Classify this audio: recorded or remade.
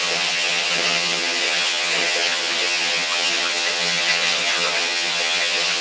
remade